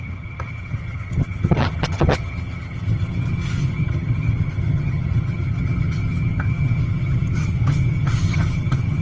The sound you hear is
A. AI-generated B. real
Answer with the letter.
A